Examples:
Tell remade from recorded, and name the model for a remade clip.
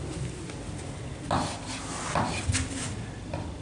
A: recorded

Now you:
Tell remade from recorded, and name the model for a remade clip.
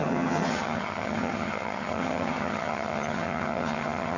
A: remade, vocoder, HiFi-GAN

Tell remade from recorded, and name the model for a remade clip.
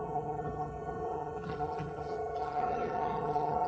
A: remade, vocoder, HiFi-GAN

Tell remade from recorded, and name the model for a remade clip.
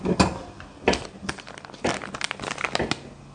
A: recorded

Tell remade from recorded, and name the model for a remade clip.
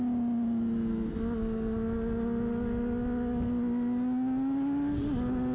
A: recorded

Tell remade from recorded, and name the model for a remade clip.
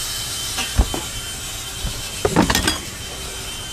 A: recorded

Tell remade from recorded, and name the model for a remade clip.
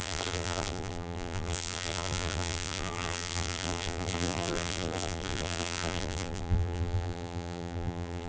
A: remade, vocoder, BigVGAN v2